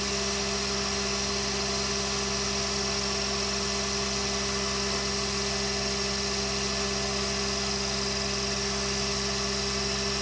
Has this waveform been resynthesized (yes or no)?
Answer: no